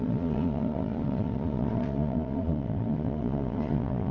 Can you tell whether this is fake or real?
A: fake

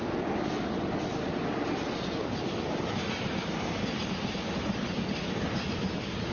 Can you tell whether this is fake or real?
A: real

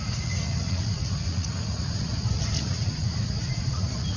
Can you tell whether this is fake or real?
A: fake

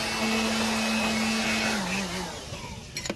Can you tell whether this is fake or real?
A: real